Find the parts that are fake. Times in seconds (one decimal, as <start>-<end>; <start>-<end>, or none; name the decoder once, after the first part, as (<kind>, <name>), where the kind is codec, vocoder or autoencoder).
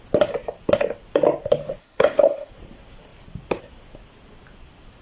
1.8-2.5 (codec, HILCodec)